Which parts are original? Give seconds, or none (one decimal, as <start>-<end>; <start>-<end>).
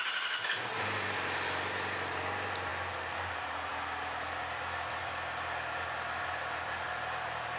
0.0-7.6